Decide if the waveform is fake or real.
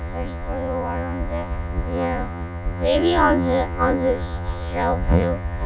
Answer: fake